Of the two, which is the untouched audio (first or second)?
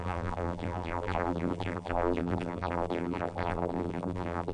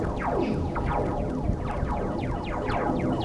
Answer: second